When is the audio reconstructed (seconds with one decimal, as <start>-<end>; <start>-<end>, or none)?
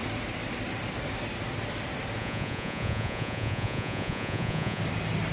2.2-4.8